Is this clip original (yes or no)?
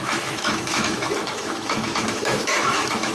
no